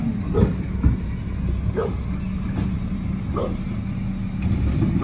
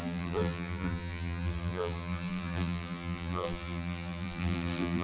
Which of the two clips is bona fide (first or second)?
first